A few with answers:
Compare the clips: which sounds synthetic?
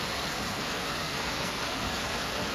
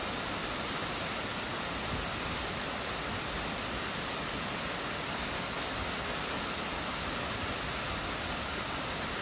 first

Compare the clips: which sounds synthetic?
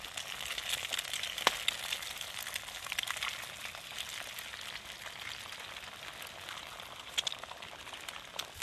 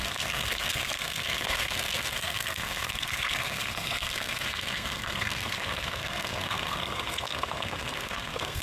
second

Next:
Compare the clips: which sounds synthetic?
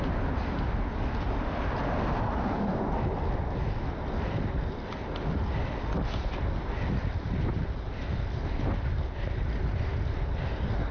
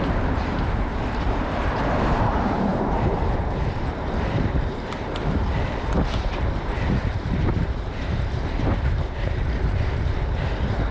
second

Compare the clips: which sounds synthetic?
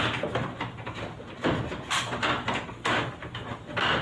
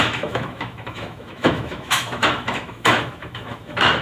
second